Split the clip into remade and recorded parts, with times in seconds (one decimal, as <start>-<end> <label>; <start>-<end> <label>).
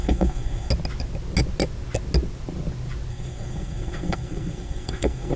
0.0-0.7 remade; 0.7-3.1 recorded; 3.1-5.4 remade